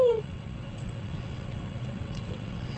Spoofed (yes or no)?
yes